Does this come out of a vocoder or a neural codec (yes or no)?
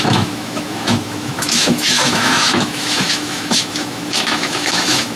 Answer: yes